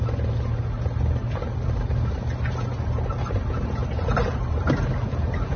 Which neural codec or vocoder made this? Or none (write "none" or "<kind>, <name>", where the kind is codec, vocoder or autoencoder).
none